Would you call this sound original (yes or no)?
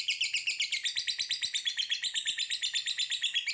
yes